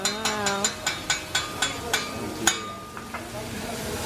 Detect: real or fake real